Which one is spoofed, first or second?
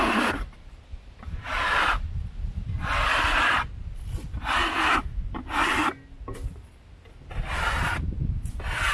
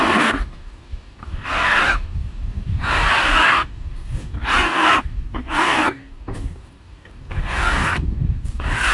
second